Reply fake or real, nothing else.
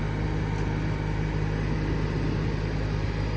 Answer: real